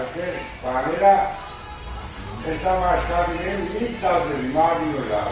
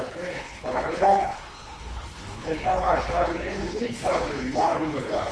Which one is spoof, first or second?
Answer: second